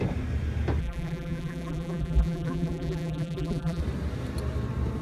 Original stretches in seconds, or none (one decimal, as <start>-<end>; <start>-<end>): 0.0-0.8; 3.8-5.0